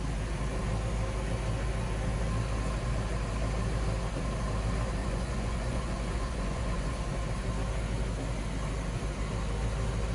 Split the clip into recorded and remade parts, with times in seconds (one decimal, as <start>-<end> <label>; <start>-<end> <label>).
0.0-5.0 recorded; 5.0-7.0 remade; 7.0-10.1 recorded